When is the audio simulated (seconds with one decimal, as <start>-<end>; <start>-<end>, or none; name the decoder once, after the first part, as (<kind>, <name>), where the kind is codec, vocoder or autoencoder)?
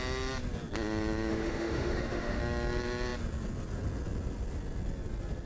1.3-2.4 (autoencoder, DAC-VAE)